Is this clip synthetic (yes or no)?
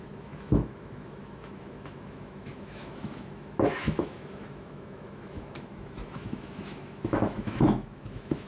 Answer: yes